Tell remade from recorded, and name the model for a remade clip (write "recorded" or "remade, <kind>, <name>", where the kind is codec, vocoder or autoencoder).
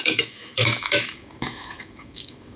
remade, autoencoder, DAC-VAE